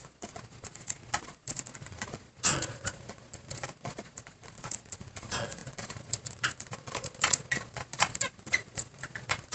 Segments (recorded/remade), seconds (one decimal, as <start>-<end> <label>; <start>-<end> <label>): 0.0-9.5 remade